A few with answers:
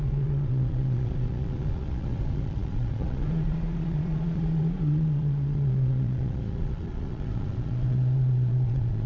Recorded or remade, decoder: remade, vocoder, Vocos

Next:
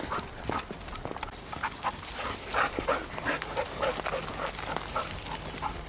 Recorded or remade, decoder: recorded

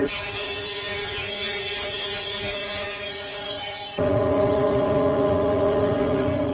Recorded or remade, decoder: remade, vocoder, Vocos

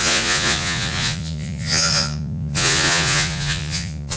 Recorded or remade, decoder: remade, vocoder, Vocos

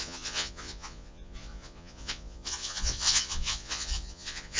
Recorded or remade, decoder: remade, vocoder, Vocos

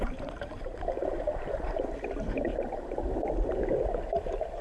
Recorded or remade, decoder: recorded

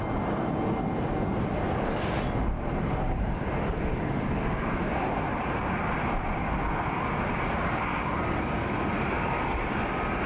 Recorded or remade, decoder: recorded